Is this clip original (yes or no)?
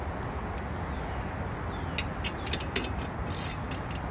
yes